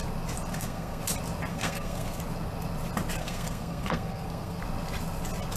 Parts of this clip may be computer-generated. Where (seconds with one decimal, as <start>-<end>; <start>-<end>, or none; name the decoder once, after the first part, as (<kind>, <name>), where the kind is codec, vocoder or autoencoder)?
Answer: 0.5-1.0 (codec, SNAC); 1.5-2.2; 3.2-4.6